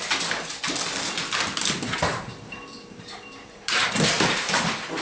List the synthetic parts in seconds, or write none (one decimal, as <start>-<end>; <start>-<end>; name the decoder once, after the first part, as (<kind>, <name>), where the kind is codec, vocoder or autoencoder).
2.1-3.8 (vocoder, BigVGAN v2)